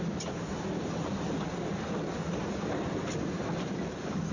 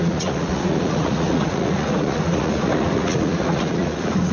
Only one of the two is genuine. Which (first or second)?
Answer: first